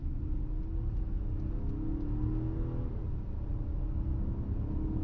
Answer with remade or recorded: recorded